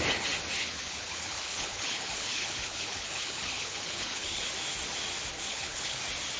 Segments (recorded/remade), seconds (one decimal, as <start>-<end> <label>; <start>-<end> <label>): 0.0-0.6 recorded; 0.6-4.4 remade; 4.4-5.5 recorded; 5.5-6.0 remade; 6.0-6.4 recorded